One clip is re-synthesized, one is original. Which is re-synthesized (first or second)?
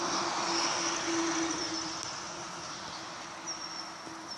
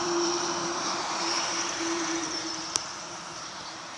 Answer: second